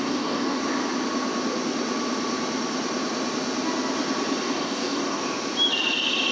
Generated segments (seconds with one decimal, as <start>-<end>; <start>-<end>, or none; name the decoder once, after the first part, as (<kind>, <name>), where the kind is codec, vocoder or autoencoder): 0.0-0.6 (codec, DAC); 4.4-5.2